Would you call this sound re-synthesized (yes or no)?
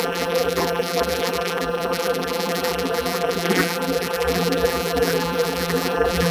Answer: yes